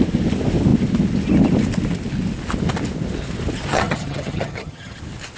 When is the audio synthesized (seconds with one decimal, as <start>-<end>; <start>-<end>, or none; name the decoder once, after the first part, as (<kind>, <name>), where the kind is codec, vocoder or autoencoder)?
3.7-5.0 (vocoder, HiFi-GAN)